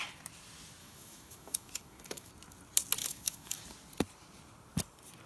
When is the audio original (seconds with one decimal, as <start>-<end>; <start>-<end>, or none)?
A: 0.0-0.8; 2.3-3.0; 3.6-5.3